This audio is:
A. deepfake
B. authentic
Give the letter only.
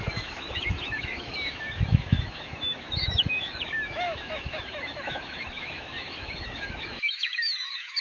A